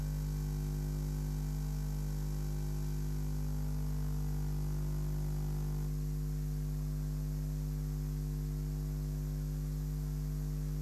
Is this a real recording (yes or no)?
yes